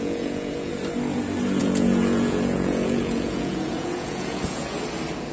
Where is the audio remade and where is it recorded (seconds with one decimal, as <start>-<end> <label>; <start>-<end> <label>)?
0.0-0.7 remade; 0.7-1.6 recorded; 1.6-4.8 remade; 4.8-5.3 recorded